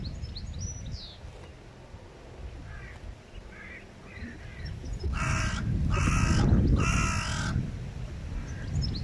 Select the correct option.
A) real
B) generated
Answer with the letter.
A